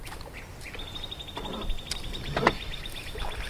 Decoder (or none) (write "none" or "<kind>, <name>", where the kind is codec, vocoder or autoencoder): none